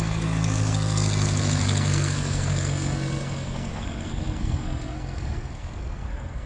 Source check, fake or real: fake